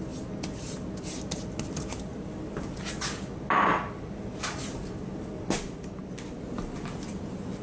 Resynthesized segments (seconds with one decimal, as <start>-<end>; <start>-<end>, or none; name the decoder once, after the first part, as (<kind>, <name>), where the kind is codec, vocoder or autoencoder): none